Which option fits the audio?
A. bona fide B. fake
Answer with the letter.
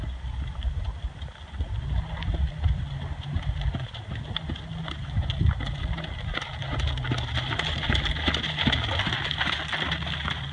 A